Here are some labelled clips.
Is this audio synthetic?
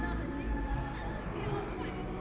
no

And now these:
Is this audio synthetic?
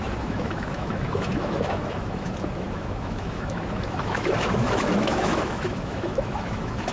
yes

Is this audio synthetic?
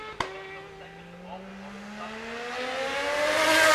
no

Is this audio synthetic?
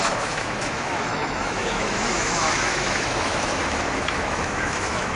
yes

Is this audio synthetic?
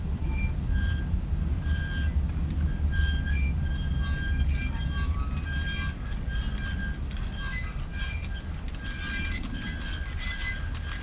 no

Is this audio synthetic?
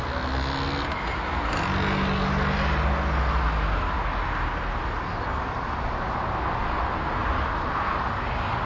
no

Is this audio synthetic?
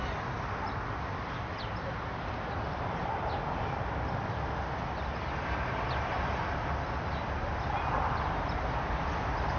no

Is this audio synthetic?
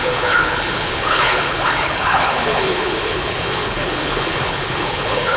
yes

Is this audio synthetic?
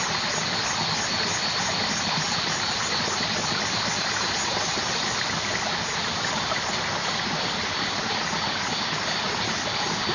no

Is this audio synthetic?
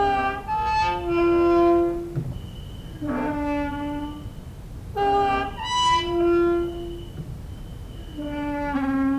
no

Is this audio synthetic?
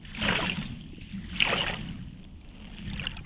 no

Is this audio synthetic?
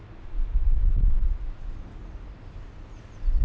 no